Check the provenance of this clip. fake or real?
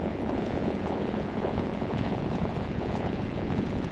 fake